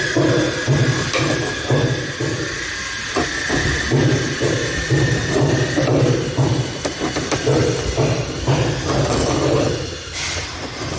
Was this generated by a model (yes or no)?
no